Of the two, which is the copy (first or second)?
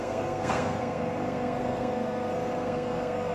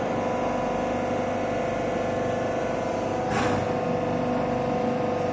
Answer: first